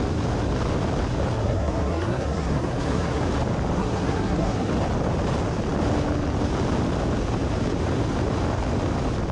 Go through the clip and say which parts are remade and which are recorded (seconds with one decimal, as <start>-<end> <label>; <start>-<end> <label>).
0.0-1.4 recorded; 1.4-3.2 remade; 3.2-3.8 recorded; 3.8-4.7 remade; 4.7-9.3 recorded